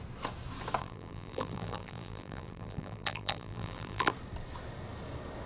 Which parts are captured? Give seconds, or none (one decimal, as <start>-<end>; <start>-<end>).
0.0-0.8; 4.1-5.5